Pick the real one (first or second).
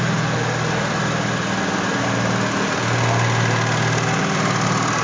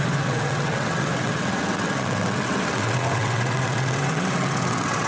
first